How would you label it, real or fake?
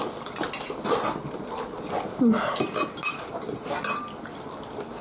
real